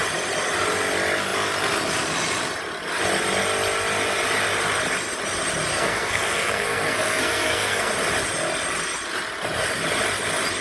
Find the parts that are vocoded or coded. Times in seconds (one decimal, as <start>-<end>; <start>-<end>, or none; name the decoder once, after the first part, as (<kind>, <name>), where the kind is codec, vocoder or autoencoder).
5.7-7.9 (codec, SNAC)